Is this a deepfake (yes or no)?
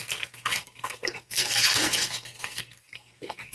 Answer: yes